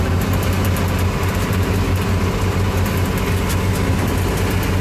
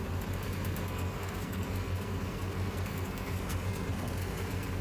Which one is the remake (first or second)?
second